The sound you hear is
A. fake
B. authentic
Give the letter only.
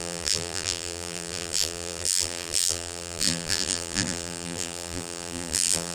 A